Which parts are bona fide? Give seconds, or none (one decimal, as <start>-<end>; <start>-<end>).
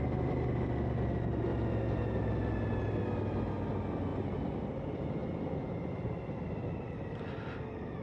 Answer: 0.0-8.0